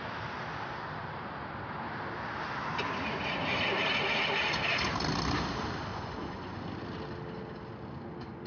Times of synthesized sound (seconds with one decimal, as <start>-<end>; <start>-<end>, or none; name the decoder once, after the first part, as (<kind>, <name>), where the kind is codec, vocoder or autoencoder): 5.9-6.7 (vocoder, Vocos)